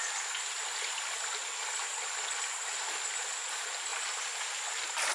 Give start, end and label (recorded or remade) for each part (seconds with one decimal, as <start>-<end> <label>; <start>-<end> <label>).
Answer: 0.0-5.1 recorded

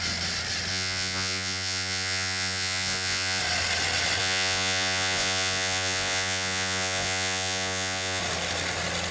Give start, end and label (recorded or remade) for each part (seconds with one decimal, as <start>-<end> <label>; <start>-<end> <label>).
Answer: 0.0-0.7 recorded; 0.7-3.4 remade; 3.4-4.2 recorded; 4.2-8.2 remade; 8.2-9.1 recorded

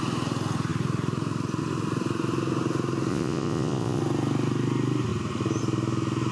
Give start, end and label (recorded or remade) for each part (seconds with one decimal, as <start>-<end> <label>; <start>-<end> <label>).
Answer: 0.0-3.1 recorded; 3.1-4.0 remade; 4.0-6.3 recorded

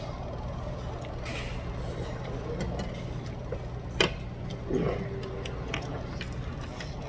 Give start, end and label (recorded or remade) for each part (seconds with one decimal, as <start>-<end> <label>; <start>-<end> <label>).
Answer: 0.0-7.1 recorded

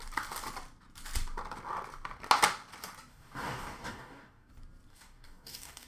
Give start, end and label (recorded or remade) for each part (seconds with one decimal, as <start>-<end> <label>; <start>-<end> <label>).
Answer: 0.0-3.1 recorded; 3.1-4.5 remade; 4.5-4.9 recorded; 4.9-5.9 remade

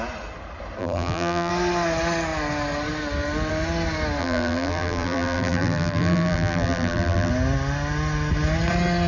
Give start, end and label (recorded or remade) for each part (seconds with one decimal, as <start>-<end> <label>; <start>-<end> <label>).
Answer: 0.0-0.8 recorded; 0.8-1.5 remade; 1.5-4.2 recorded; 4.2-7.3 remade; 7.3-9.1 recorded